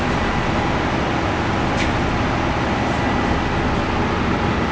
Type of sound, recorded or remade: recorded